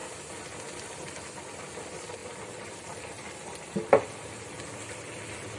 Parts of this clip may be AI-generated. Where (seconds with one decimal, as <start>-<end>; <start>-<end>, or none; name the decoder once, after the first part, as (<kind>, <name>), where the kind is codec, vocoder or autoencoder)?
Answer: none